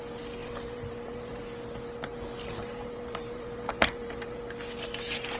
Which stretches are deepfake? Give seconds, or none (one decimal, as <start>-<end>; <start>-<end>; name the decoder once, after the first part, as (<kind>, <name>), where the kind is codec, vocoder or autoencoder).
0.4-1.4 (vocoder, BigVGAN v2); 2.6-4.4